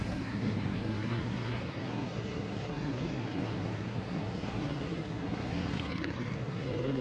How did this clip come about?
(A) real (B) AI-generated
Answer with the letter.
B